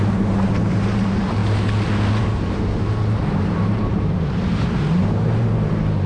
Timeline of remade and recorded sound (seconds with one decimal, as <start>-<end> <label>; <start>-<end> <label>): 0.0-1.4 remade; 1.4-2.2 recorded; 2.2-6.1 remade